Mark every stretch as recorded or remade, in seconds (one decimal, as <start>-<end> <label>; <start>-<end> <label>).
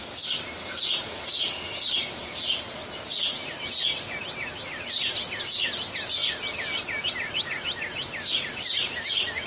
0.0-9.5 recorded